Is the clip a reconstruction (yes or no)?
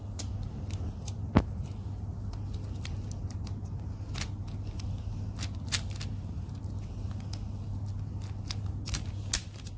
no